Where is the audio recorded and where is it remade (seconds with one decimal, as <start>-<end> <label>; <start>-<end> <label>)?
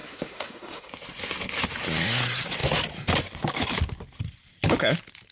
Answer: 0.0-0.9 remade; 0.9-5.3 recorded